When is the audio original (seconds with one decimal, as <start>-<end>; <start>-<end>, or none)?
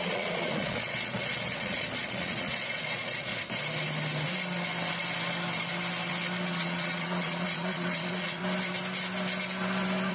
3.3-6.5; 8.4-10.1